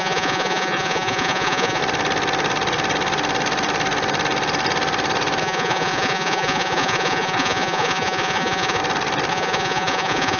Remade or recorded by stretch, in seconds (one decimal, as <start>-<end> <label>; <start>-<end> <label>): 0.0-1.8 remade; 1.8-5.4 recorded; 5.4-8.8 remade; 8.8-9.3 recorded; 9.3-10.4 remade